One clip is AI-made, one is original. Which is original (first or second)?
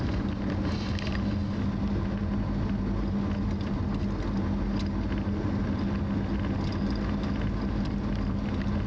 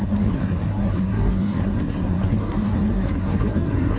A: first